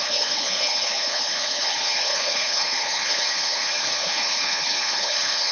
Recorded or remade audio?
remade